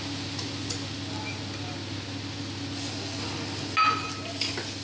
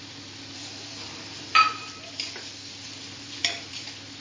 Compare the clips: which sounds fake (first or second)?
second